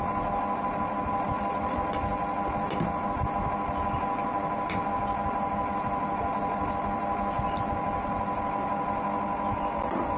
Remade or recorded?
recorded